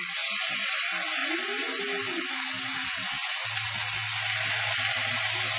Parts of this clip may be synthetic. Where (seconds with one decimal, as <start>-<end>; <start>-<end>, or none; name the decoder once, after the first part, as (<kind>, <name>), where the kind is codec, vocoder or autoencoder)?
none